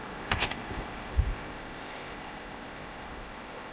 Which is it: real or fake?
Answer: fake